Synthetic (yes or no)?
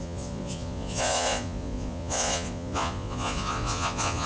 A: yes